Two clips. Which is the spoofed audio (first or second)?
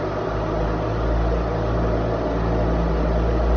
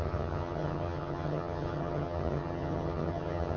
second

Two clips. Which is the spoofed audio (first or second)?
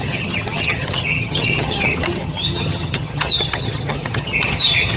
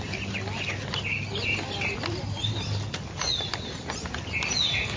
first